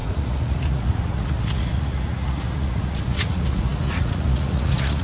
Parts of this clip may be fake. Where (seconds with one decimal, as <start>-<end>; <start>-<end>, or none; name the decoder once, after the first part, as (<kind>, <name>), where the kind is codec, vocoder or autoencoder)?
0.0-5.0 (vocoder, Vocos)

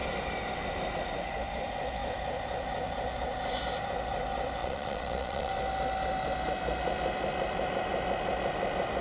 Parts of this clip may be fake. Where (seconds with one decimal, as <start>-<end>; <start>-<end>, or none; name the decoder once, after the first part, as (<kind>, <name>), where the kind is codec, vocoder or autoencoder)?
4.6-5.5 (vocoder, Vocos)

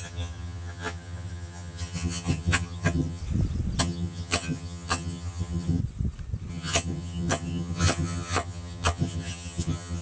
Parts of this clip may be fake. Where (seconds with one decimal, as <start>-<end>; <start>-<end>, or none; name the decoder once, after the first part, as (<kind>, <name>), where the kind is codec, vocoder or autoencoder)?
0.0-3.2 (vocoder, HiFi-GAN); 3.8-5.8; 6.5-10.0

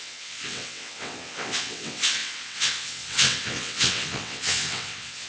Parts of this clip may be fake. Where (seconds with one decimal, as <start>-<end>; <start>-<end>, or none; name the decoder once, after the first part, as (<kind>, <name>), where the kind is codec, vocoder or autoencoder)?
0.0-5.3 (vocoder, WaveNeXt)